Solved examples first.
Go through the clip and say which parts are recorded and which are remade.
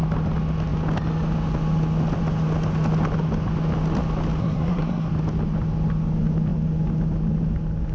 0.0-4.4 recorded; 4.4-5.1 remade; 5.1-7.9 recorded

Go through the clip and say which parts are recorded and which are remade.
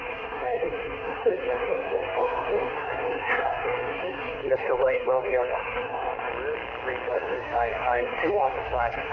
0.0-6.3 remade; 6.3-7.1 recorded; 7.1-9.1 remade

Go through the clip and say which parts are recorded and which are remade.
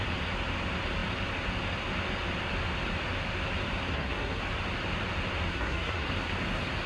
0.0-3.9 recorded; 3.9-4.4 remade; 4.4-5.5 recorded; 5.5-6.1 remade; 6.1-6.9 recorded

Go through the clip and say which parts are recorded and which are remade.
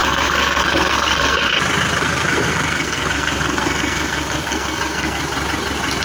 0.0-1.5 remade; 1.5-2.0 recorded; 2.0-5.2 remade; 5.2-6.0 recorded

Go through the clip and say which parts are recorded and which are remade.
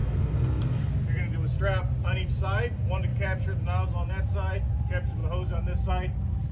0.0-0.9 remade; 0.9-6.5 recorded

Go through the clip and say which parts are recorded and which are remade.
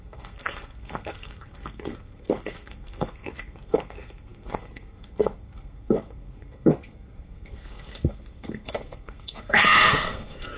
0.0-10.6 remade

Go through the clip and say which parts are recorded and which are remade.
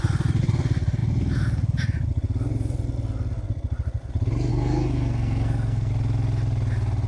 0.0-4.5 recorded; 4.5-5.9 remade; 5.9-7.1 recorded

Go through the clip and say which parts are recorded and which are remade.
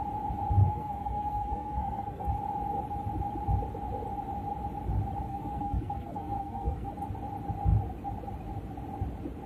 0.0-0.6 recorded; 0.6-2.3 remade; 2.3-5.3 recorded; 5.3-6.9 remade; 6.9-9.5 recorded